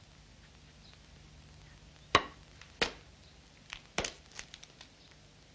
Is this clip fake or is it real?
real